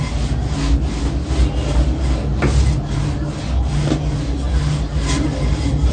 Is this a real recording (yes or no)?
yes